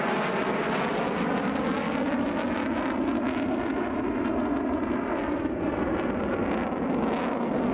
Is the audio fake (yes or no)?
no